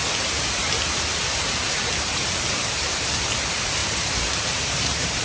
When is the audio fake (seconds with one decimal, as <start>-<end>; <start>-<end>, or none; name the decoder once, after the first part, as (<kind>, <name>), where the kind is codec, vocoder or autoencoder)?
0.0-5.2 (vocoder, BigVGAN v2)